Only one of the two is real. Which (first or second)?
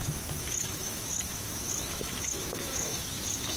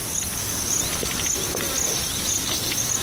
second